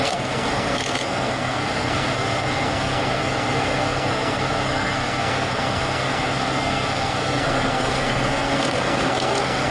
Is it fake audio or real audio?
fake